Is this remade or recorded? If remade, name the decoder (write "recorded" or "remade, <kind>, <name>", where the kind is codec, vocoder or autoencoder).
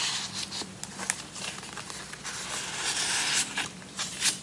recorded